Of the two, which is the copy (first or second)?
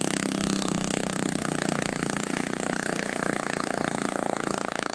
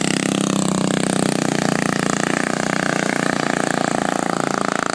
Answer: first